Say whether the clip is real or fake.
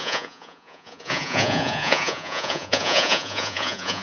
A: fake